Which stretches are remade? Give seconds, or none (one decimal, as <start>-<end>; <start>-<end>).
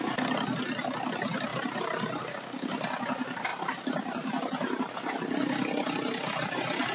1.5-2.3; 3.5-4.9